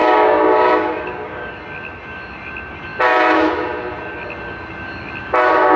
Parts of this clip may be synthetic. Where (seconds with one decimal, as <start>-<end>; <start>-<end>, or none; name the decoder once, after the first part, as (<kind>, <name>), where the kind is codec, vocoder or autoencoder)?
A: 0.0-1.5 (codec, DAC)